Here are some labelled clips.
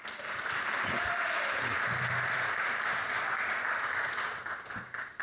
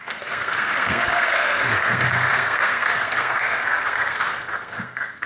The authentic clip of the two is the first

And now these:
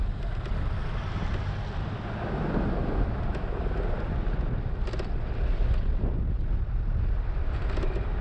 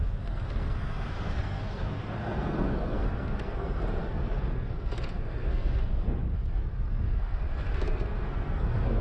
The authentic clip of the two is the first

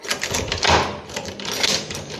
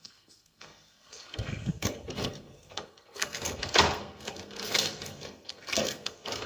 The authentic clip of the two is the first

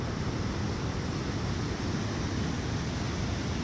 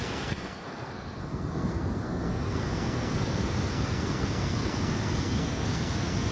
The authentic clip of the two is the first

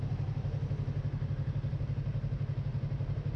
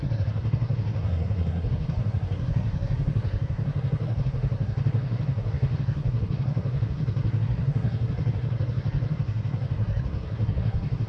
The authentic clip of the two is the first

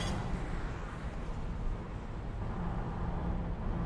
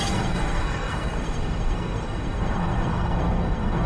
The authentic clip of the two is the first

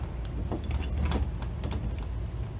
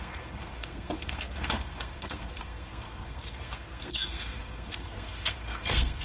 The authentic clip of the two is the first